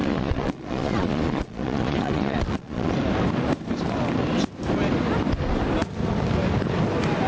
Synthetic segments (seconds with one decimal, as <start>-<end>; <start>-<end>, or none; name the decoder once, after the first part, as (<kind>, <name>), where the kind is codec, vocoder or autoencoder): 0.0-2.9 (vocoder, Vocos)